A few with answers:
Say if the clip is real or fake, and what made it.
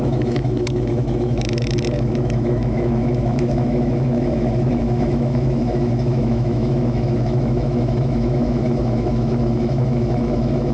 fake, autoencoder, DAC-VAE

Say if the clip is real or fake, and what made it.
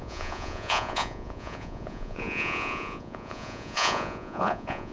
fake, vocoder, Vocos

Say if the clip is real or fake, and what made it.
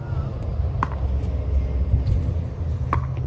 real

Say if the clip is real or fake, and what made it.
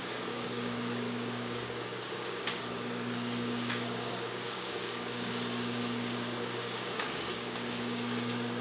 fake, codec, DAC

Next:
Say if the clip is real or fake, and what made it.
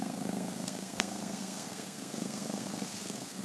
fake, codec, SNAC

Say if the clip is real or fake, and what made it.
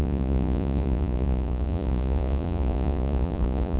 fake, vocoder, Vocos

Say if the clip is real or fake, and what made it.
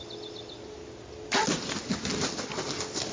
real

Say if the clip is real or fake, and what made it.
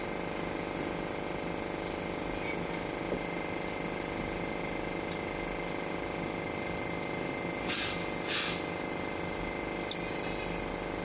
real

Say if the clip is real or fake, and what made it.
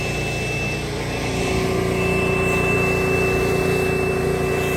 real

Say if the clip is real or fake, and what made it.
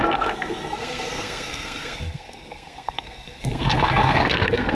fake, codec, SNAC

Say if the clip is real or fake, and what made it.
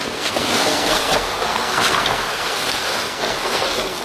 fake, codec, SNAC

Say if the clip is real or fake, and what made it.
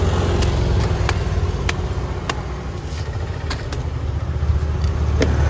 real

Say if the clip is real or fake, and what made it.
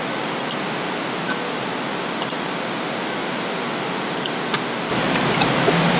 real